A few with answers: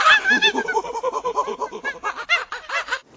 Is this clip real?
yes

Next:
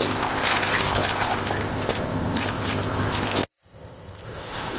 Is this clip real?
no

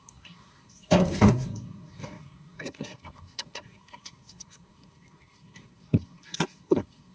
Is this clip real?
no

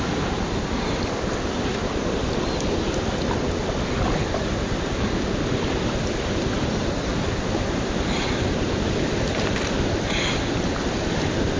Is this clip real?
yes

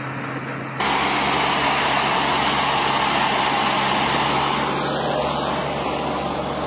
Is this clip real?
yes